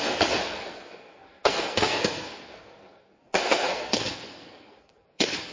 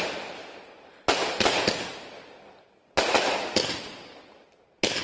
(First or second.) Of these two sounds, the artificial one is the first